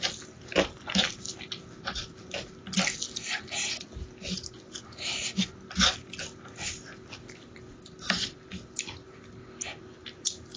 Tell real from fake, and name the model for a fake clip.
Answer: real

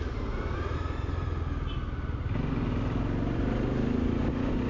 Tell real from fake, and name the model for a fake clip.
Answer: real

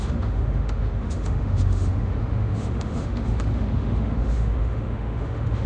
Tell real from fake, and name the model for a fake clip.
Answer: fake, autoencoder, DAC-VAE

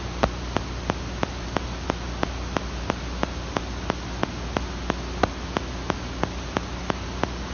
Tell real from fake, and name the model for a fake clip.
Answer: real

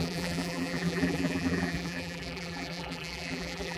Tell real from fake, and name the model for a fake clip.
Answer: fake, vocoder, BigVGAN v2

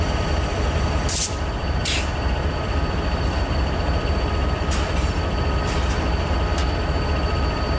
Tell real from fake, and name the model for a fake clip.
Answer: fake, vocoder, BigVGAN v2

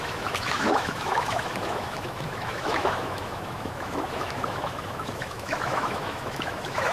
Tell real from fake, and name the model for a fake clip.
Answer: fake, autoencoder, DAC-VAE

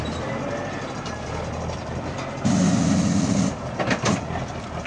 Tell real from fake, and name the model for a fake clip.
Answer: real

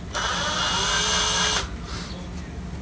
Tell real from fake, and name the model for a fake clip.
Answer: real